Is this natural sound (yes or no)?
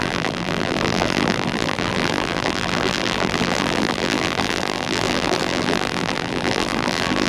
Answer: no